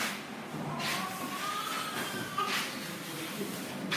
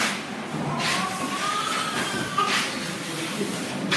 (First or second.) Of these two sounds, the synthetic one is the second